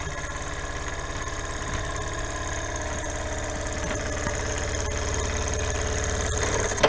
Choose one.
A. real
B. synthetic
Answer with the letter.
A